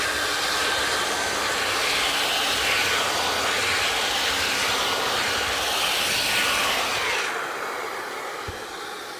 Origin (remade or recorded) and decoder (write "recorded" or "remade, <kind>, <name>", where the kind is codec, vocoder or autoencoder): recorded